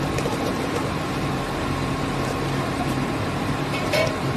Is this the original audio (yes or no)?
no